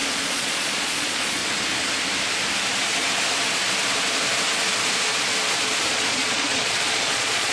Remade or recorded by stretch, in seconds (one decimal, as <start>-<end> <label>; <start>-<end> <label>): 0.0-1.4 remade; 1.4-5.9 recorded; 5.9-7.5 remade